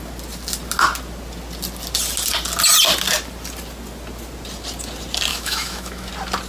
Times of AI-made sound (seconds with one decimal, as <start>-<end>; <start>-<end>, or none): 5.3-6.1